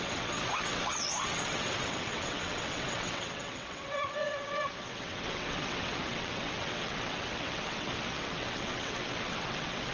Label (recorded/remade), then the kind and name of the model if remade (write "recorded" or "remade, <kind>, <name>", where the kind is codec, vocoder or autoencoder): remade, vocoder, WaveNeXt